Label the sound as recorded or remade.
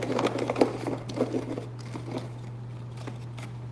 recorded